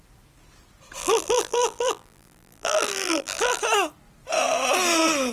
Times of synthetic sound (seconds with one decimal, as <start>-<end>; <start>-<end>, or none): 1.0-3.6